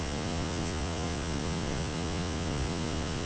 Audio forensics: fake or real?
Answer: fake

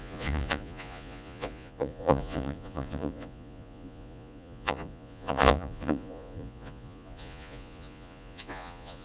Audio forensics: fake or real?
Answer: fake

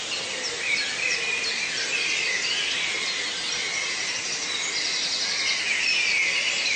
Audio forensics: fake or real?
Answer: real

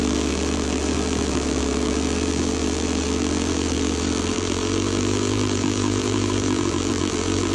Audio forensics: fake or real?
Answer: fake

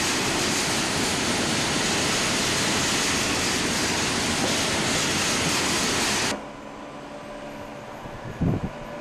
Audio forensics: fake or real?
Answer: real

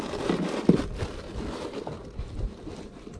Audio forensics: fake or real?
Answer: real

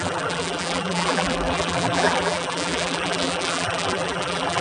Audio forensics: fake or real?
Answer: fake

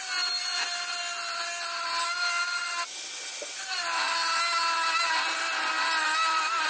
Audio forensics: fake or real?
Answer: real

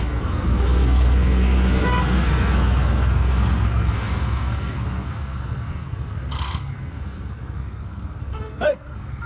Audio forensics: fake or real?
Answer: fake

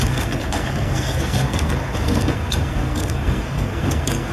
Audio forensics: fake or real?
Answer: fake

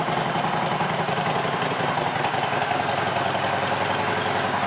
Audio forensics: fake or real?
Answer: real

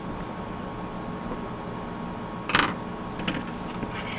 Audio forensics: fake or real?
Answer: real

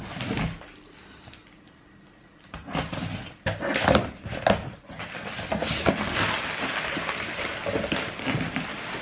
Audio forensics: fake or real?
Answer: real